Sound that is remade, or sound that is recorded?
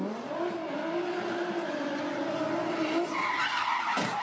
recorded